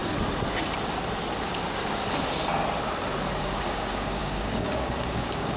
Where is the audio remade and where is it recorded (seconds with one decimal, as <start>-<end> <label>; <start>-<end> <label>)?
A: 0.0-3.4 recorded; 3.4-5.6 remade